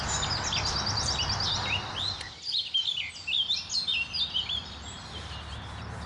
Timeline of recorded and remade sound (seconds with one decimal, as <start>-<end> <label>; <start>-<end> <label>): 0.0-6.1 recorded